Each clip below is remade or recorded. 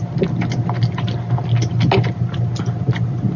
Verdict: recorded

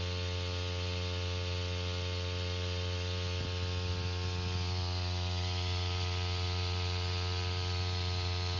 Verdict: recorded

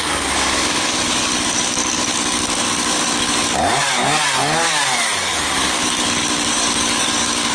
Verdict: remade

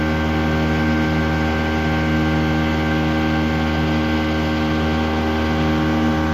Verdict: recorded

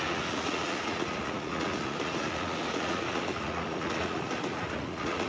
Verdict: remade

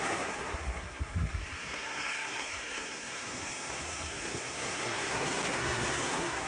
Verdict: remade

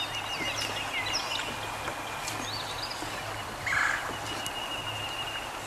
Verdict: recorded